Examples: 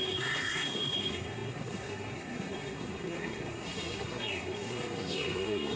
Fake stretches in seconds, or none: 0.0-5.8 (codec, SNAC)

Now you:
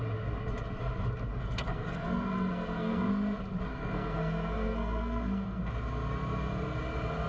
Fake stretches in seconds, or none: 1.3-3.1 (codec, SNAC); 3.7-5.7

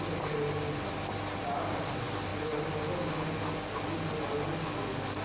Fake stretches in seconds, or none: none

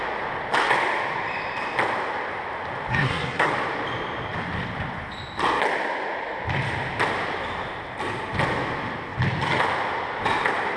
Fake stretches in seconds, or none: 2.9-3.5 (codec, SNAC)

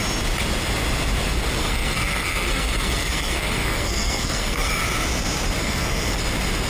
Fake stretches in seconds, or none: 1.6-4.7 (codec, SNAC); 5.6-6.2

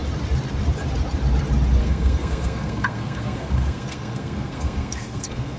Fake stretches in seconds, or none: 1.8-5.6 (codec, SNAC)